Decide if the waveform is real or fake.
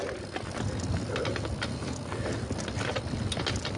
real